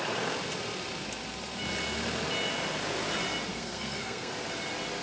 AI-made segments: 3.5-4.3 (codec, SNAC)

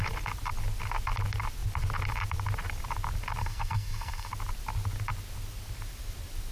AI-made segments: 3.4-4.3 (codec, SNAC)

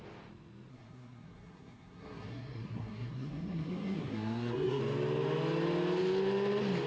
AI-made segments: 0.7-4.8 (codec, SNAC)

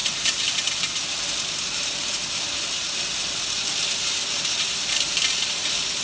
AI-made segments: none